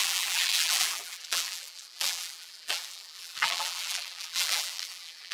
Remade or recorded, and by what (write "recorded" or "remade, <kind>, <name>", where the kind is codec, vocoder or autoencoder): remade, vocoder, BigVGAN v2